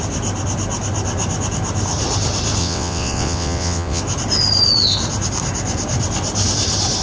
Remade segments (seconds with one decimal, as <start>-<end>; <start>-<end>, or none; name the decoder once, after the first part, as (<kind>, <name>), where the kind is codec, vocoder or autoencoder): 2.6-4.0 (vocoder, WaveNeXt)